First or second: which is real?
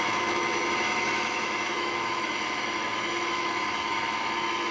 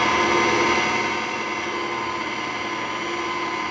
second